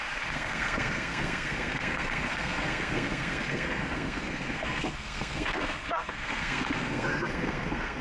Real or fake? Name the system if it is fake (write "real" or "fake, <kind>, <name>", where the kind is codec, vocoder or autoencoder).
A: fake, codec, SNAC